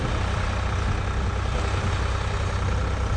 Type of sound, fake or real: real